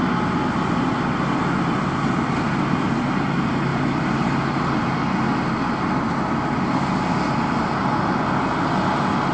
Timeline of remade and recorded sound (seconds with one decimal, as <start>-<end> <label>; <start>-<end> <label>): 0.0-9.3 recorded